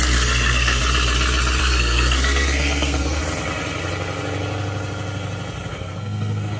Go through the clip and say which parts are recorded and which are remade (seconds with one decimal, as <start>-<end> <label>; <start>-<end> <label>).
0.0-0.8 remade; 0.8-1.6 recorded; 1.6-3.2 remade; 3.2-5.7 recorded; 5.7-6.6 remade